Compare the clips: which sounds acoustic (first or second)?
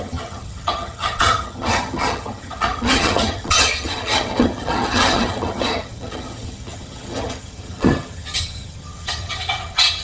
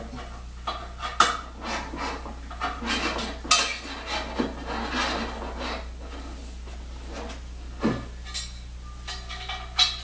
second